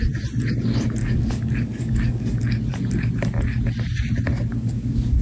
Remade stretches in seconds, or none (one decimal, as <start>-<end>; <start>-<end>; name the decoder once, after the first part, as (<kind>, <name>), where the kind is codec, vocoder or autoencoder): 1.0-2.4 (codec, DAC); 4.5-5.2